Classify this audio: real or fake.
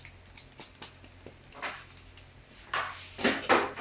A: real